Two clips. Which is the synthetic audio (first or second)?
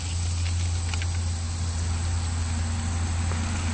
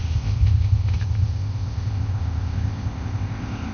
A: second